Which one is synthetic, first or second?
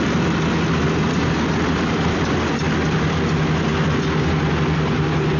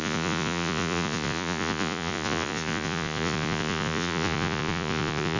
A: second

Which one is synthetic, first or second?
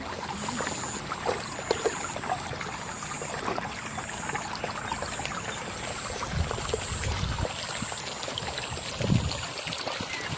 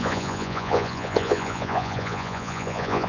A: second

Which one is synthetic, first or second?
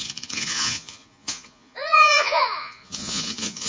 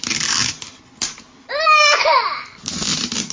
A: first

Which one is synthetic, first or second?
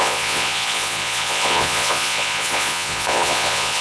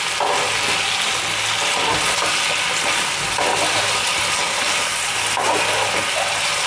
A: first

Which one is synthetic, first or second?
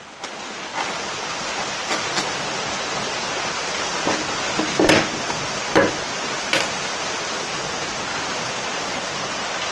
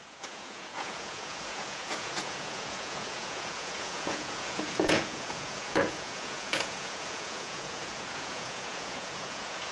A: second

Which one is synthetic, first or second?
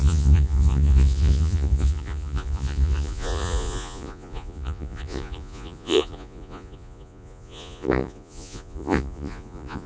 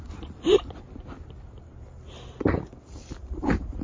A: first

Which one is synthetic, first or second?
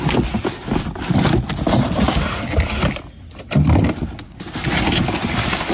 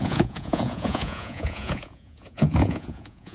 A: second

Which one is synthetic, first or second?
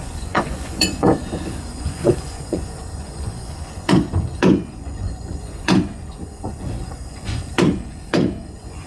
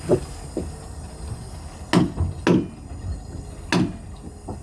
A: first